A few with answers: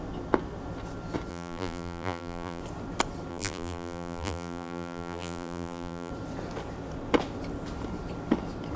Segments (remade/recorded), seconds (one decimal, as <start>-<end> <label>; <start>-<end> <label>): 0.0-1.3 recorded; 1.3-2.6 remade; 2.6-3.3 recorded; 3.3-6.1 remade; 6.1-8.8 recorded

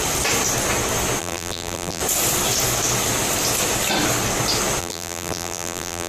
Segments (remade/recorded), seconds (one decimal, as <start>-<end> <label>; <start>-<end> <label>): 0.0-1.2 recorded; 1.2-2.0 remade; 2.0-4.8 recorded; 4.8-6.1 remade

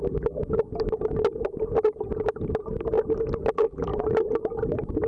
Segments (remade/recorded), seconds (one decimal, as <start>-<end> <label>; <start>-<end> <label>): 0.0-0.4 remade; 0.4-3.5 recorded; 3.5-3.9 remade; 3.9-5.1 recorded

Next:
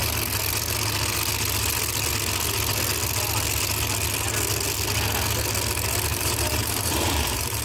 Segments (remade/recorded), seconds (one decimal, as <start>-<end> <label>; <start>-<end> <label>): 0.0-6.1 recorded; 6.1-7.6 remade

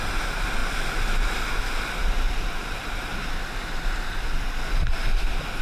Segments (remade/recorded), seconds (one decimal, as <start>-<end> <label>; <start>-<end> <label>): 0.0-0.6 remade; 0.6-1.6 recorded; 1.6-3.1 remade; 3.1-5.6 recorded

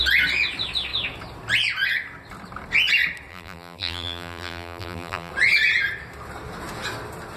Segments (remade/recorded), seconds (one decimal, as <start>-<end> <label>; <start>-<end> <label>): 0.0-3.3 recorded; 3.3-5.3 remade; 5.3-7.4 recorded